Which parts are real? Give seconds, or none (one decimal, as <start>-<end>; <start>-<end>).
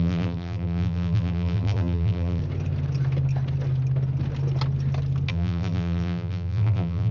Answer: 2.4-5.3